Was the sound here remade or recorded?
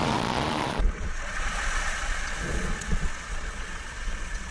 remade